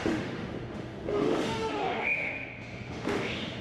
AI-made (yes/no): yes